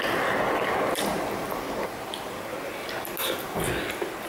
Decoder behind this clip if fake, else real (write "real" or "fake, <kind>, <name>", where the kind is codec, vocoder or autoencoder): real